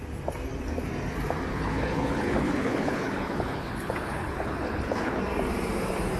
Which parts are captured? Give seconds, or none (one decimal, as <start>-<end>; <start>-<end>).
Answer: 0.0-1.5; 5.2-6.2